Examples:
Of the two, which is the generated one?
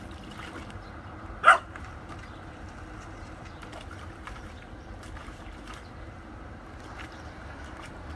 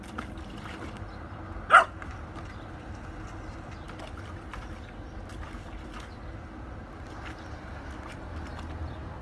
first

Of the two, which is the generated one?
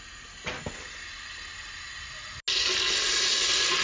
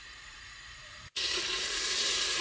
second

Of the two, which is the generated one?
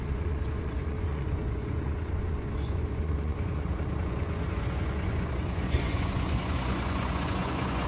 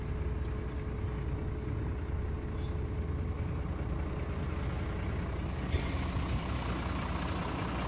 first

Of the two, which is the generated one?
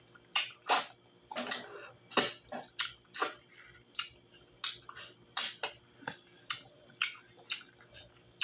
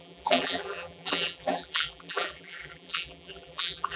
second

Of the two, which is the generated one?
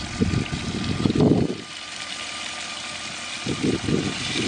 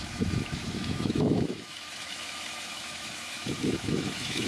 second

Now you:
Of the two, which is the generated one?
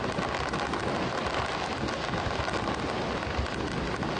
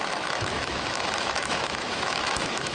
second